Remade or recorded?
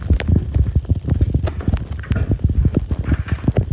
recorded